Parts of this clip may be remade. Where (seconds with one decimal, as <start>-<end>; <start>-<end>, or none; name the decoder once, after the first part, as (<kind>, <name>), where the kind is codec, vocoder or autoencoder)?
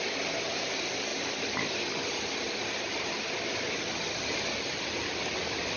none